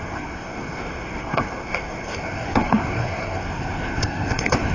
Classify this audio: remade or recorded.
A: remade